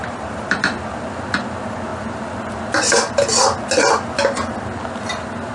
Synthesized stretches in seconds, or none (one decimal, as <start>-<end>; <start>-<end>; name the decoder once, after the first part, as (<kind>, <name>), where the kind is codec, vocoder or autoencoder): 0.0-0.6 (vocoder, BigVGAN v2)